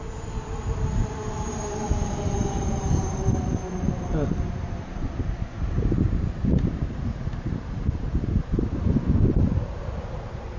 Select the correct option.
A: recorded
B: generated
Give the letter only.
B